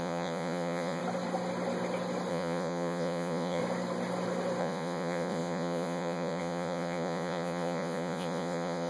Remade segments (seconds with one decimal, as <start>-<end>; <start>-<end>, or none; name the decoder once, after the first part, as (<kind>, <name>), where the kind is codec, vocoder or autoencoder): 0.0-1.0 (vocoder, Vocos); 2.3-3.6; 4.6-8.9